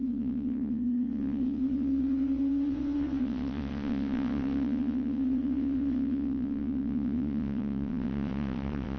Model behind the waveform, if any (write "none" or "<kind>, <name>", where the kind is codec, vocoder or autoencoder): vocoder, WaveNeXt